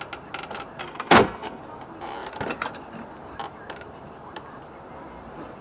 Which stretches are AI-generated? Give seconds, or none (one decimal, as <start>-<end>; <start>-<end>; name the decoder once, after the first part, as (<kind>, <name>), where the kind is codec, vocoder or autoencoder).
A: 0.8-1.6 (codec, SNAC)